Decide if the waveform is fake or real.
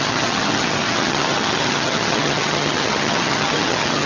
fake